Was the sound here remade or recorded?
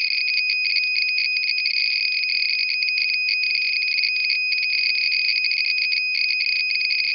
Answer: recorded